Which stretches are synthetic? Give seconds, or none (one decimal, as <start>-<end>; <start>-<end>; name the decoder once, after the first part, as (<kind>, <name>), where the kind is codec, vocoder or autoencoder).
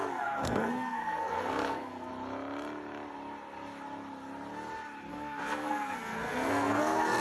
0.0-2.1 (codec, SNAC); 5.1-7.2